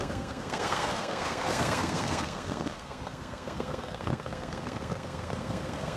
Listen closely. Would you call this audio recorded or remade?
remade